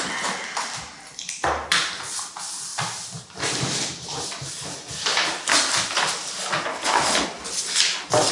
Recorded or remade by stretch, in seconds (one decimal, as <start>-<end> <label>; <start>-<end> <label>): 0.0-8.3 recorded